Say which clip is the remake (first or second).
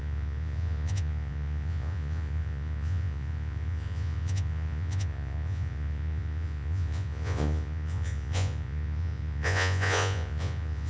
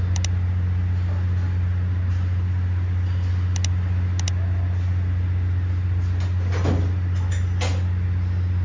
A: first